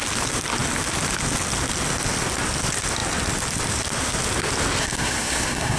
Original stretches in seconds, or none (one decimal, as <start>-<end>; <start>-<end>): 0.0-4.8

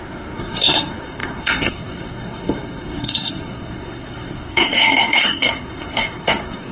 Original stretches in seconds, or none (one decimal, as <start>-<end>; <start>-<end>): none

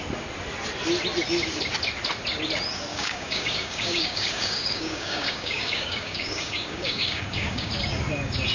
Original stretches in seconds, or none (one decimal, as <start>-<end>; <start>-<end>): 0.0-2.9; 7.7-8.5

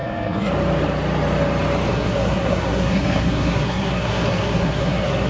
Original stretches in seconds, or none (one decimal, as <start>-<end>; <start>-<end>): 0.5-1.9